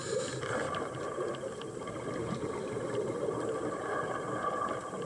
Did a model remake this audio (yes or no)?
no